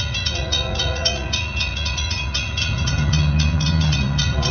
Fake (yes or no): yes